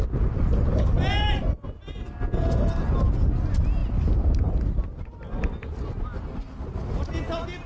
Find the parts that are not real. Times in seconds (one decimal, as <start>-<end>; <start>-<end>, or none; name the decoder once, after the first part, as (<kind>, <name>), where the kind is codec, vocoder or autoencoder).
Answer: none